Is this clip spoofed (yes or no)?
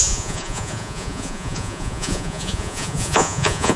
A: yes